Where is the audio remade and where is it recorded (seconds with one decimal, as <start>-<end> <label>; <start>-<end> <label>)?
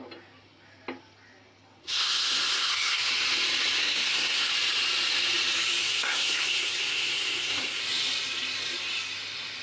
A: 0.0-1.8 recorded; 1.8-3.1 remade; 3.1-3.8 recorded; 3.8-4.5 remade; 4.5-5.8 recorded; 5.8-7.8 remade; 7.8-9.6 recorded